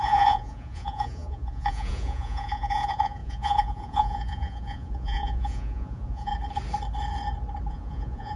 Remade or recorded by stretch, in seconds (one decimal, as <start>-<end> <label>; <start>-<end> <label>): 0.0-6.3 remade; 6.3-7.7 recorded; 7.7-8.4 remade